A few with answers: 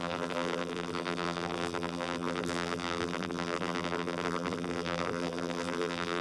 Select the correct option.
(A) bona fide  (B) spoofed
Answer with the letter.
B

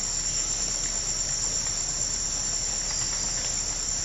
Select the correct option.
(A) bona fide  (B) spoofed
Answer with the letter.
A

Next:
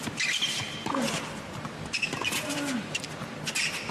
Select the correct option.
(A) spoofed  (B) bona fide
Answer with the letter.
B